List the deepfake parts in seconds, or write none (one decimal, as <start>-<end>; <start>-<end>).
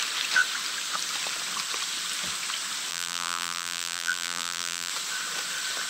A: 2.9-4.9